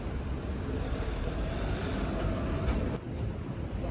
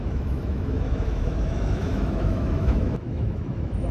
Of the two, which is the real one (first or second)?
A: first